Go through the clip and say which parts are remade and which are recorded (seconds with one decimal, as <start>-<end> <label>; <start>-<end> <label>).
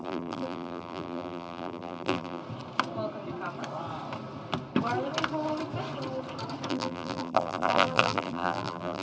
0.0-2.4 remade; 2.4-6.7 recorded; 6.7-9.0 remade